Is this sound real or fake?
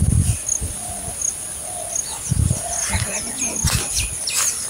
real